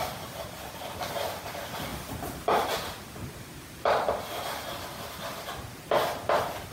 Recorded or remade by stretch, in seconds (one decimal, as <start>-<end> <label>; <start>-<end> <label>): 0.0-6.7 recorded